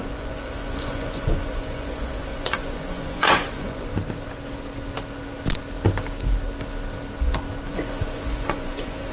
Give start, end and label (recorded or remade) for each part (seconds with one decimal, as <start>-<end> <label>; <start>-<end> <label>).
0.0-3.9 remade; 3.9-7.7 recorded; 7.7-9.1 remade